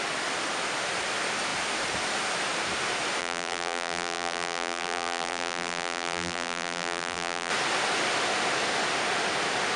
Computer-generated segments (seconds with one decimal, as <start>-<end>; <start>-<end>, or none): 3.2-7.5